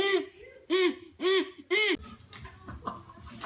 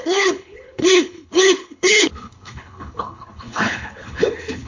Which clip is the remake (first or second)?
second